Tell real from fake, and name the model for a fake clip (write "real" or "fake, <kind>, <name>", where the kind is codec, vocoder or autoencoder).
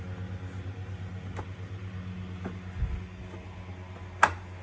real